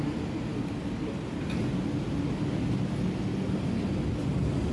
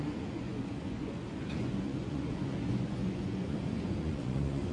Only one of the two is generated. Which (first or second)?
second